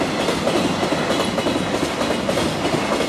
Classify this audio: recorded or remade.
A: recorded